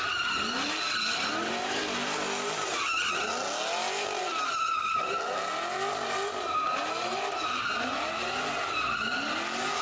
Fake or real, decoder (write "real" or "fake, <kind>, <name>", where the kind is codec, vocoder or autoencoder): real